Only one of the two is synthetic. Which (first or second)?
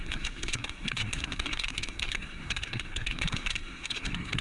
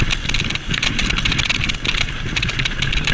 first